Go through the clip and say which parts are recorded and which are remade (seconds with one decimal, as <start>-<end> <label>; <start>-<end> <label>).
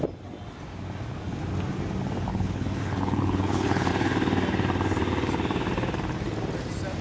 0.0-2.3 recorded; 2.3-3.9 remade; 3.9-7.0 recorded